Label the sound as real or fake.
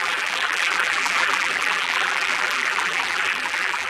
fake